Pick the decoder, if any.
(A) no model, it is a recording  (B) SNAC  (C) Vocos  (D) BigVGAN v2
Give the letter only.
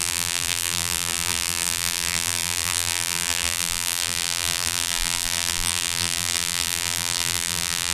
D